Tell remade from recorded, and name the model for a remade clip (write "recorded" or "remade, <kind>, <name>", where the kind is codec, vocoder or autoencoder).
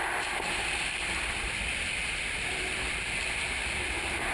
recorded